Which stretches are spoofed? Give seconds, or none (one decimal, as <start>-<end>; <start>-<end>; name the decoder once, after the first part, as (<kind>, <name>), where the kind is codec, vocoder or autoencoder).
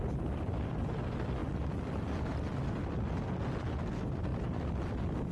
none